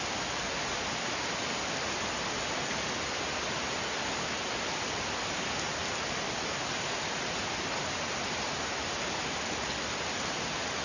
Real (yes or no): yes